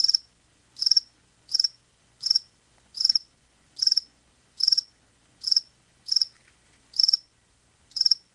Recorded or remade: remade